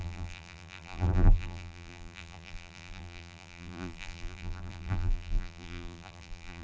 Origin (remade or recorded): remade